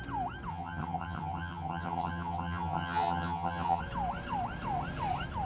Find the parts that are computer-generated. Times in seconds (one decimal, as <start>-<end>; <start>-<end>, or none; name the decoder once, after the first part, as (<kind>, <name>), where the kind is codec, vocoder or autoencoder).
0.5-3.8 (vocoder, HiFi-GAN)